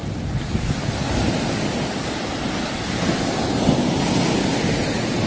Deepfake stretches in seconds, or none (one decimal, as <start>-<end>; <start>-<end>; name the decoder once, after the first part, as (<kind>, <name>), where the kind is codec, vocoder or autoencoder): none